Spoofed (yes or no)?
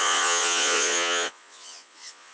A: yes